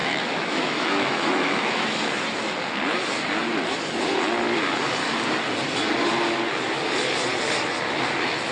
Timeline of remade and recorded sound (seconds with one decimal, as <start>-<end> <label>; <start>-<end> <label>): 0.0-2.0 remade; 2.0-8.5 recorded